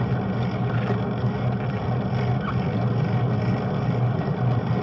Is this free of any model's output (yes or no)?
yes